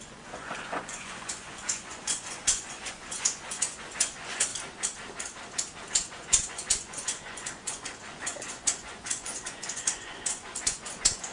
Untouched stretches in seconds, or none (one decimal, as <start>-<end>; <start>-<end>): 4.5-5.9